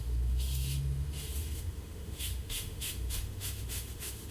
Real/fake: fake